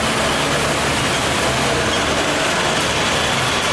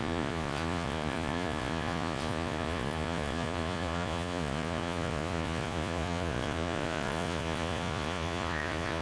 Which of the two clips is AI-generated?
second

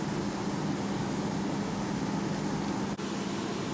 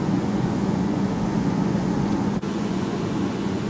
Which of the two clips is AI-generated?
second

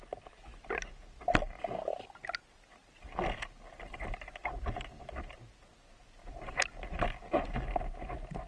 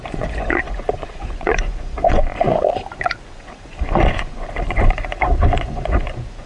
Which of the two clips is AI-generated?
second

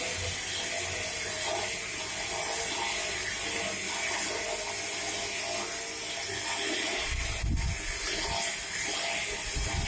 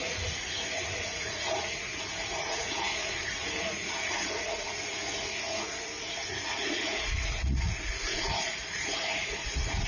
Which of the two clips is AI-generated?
second